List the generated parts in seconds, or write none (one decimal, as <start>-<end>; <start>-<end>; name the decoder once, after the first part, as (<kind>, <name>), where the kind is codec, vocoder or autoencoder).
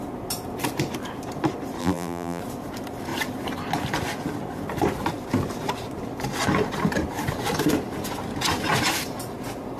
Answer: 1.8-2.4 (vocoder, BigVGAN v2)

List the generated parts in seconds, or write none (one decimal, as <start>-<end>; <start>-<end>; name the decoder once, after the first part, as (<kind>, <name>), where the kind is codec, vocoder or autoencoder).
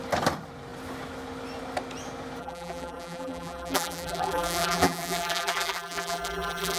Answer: 2.4-6.8 (vocoder, BigVGAN v2)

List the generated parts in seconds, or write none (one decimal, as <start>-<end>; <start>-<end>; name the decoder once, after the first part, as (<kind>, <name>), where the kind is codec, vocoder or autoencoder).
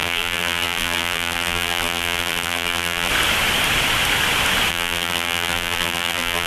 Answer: 0.0-3.1 (vocoder, BigVGAN v2); 4.7-6.5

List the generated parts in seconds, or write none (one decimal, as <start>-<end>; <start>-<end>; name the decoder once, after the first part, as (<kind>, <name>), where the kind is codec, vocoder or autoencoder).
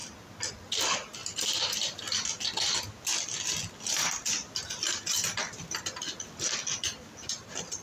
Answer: 1.2-2.0 (vocoder, BigVGAN v2)